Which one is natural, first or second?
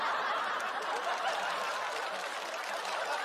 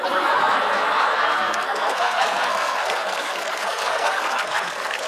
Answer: first